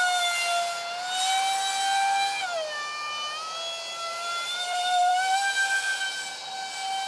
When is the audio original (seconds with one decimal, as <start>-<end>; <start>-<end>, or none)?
0.0-4.1; 6.0-7.1